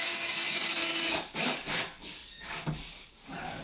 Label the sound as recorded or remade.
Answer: remade